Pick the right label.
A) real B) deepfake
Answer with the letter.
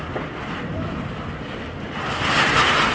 A